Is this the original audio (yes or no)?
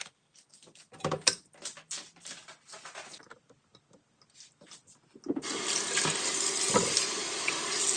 yes